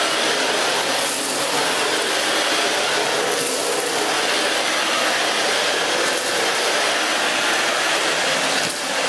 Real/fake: real